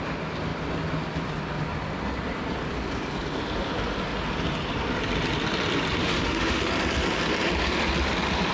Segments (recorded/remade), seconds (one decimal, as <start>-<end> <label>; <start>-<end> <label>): 0.0-6.0 recorded; 6.0-6.6 remade; 6.6-8.5 recorded